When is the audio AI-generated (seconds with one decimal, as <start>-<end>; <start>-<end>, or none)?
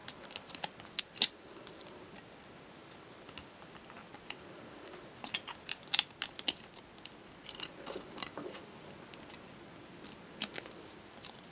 none